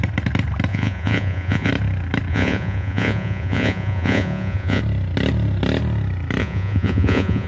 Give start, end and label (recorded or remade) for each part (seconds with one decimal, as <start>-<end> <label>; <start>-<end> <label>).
0.0-0.7 recorded; 0.7-1.7 remade; 1.7-2.3 recorded; 2.3-4.8 remade; 4.8-6.4 recorded; 6.4-7.5 remade